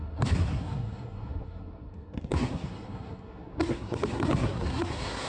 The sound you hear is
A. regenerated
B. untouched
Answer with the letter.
A